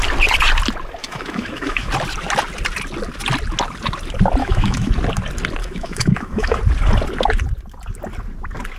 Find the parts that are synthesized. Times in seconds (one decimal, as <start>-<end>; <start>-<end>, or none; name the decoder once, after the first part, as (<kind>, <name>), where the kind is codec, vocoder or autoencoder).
1.0-1.9 (autoencoder, DAC-VAE); 4.4-4.9; 5.6-6.6